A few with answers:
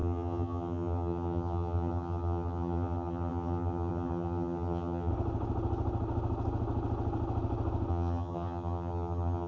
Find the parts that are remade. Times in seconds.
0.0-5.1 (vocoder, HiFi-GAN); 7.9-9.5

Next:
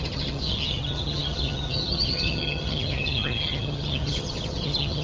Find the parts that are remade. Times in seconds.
0.0-5.0 (vocoder, HiFi-GAN)

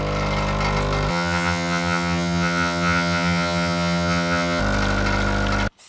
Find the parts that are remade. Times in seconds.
1.1-4.6 (vocoder, HiFi-GAN)

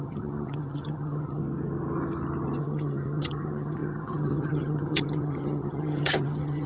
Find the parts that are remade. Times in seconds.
0.0-1.4 (vocoder, HiFi-GAN); 2.6-6.7

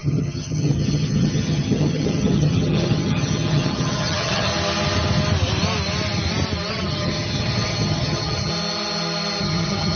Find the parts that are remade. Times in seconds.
0.0-4.5 (vocoder, HiFi-GAN); 6.7-8.5; 9.4-10.0

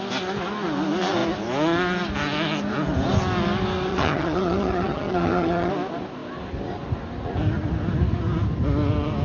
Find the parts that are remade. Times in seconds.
3.9-5.7 (vocoder, HiFi-GAN)

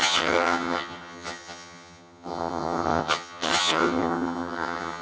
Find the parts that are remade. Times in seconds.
0.0-5.0 (vocoder, HiFi-GAN)